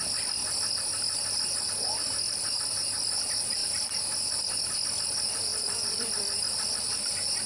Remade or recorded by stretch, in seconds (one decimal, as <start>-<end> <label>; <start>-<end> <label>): 0.0-0.4 remade; 0.4-1.6 recorded; 1.6-7.5 remade